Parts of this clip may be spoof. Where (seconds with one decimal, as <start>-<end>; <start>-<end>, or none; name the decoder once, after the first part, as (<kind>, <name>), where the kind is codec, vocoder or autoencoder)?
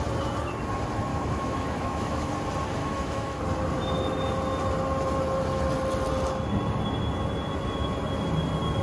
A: 1.1-2.3 (autoencoder, DAC-VAE); 2.8-3.4